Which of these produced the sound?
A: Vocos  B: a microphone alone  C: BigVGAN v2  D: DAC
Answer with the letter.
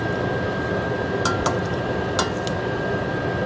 B